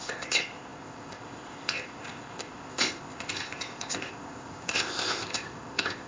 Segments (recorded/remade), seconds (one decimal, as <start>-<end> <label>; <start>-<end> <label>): 0.0-6.1 remade